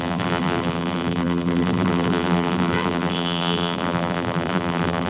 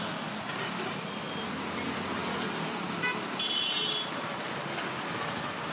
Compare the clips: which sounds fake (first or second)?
first